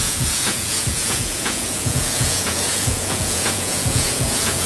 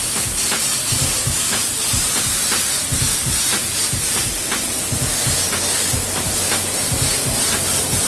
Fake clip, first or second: first